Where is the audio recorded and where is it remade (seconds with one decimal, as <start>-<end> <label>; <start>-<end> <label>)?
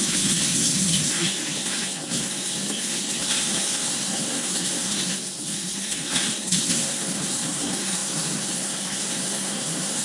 0.0-10.0 remade